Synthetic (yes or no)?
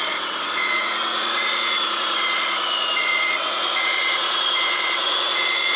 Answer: yes